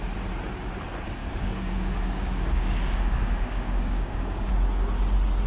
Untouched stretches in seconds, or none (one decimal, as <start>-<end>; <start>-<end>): 0.0-1.2; 4.5-5.5